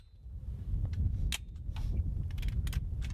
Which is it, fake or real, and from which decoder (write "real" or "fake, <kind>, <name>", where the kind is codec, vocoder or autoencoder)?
real